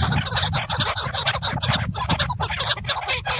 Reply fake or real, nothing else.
real